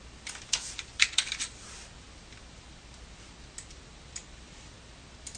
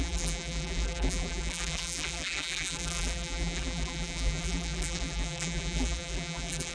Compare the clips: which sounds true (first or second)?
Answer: first